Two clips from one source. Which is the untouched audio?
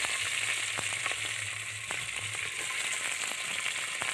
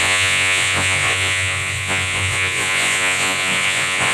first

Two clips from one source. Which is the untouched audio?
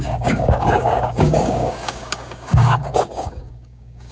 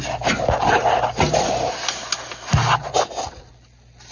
second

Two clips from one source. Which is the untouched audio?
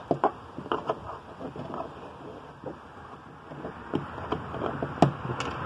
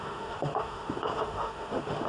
first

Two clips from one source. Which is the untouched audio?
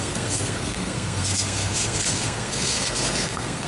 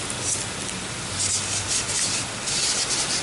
second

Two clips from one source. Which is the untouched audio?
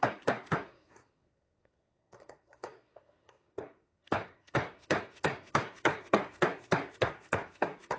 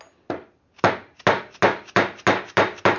second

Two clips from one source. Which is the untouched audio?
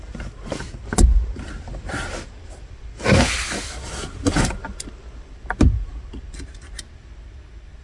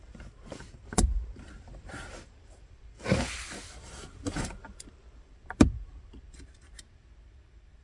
first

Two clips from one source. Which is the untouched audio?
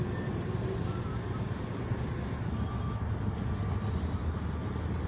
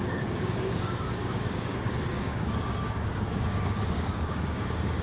first